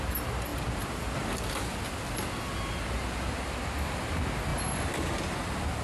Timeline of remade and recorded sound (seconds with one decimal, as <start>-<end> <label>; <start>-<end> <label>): 0.0-5.8 recorded